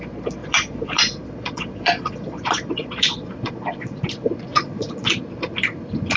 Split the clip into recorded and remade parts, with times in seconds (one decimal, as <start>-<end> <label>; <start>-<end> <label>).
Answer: 0.0-0.4 recorded; 0.4-4.1 remade; 4.1-4.5 recorded; 4.5-5.1 remade; 5.1-6.2 recorded